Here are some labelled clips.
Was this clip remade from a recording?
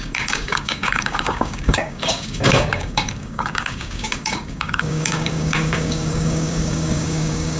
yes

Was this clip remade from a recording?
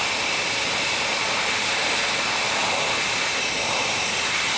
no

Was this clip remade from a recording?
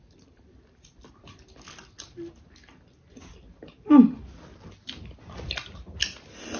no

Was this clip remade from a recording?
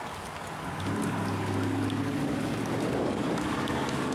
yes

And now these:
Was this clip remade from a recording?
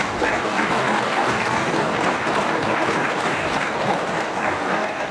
yes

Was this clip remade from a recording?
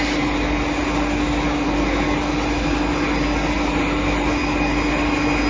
no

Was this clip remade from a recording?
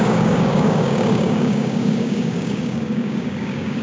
yes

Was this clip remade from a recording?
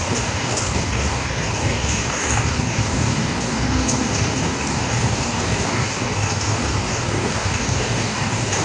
yes